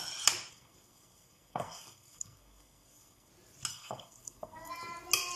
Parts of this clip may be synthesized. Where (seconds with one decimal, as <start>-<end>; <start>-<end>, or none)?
0.5-3.3; 3.7-4.7